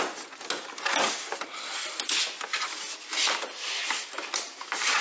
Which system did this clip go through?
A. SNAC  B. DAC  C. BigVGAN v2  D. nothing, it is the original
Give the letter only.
D